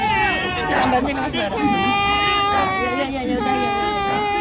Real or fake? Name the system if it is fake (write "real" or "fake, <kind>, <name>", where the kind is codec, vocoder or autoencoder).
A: real